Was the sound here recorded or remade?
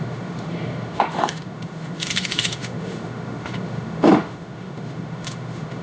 remade